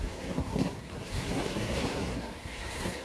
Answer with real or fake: fake